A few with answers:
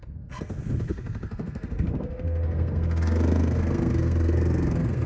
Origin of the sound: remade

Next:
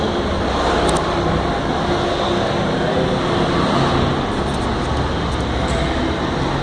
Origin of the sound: recorded